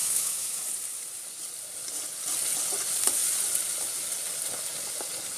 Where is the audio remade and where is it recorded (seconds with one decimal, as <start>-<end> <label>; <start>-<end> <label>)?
0.0-0.6 remade; 0.6-5.4 recorded